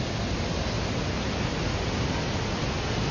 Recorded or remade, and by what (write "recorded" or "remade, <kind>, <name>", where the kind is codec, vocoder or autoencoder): recorded